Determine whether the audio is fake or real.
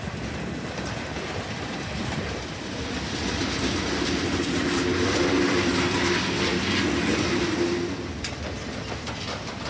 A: real